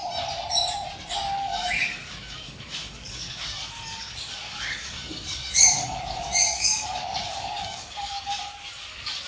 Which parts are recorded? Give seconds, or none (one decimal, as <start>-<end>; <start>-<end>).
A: 0.0-1.1